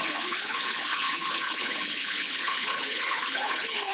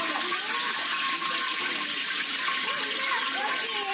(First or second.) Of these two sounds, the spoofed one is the first